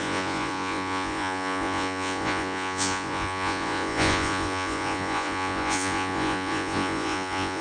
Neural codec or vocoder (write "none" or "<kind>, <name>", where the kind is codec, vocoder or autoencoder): vocoder, Vocos